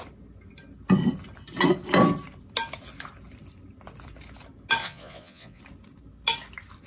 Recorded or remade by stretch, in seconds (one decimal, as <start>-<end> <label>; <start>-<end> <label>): 0.0-4.8 recorded; 4.8-5.6 remade; 5.6-6.9 recorded